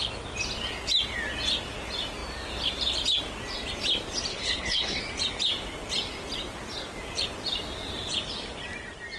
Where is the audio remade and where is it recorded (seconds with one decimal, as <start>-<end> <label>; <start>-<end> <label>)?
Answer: 0.0-4.3 recorded; 4.3-5.0 remade; 5.0-9.2 recorded